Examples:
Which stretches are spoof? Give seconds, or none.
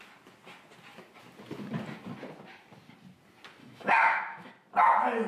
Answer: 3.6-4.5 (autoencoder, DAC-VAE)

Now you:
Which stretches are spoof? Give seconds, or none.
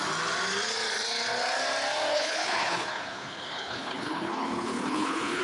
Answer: 2.1-5.4 (codec, HILCodec)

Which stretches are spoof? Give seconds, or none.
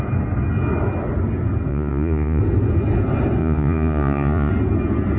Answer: 1.7-2.4 (vocoder, Vocos); 3.4-4.5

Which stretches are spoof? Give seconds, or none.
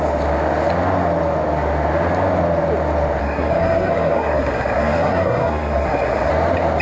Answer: 3.2-6.3 (codec, SNAC)